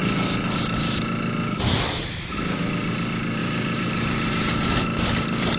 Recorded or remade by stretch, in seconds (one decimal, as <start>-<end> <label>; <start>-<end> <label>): 0.0-3.4 recorded; 3.4-4.7 remade; 4.7-5.6 recorded